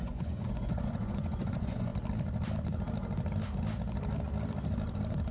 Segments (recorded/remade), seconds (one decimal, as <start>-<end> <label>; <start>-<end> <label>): 0.0-1.9 remade; 1.9-5.3 recorded